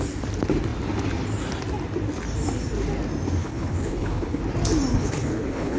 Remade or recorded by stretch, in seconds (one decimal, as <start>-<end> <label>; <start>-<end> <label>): 0.0-3.4 recorded; 3.4-4.4 remade; 4.4-4.9 recorded; 4.9-5.8 remade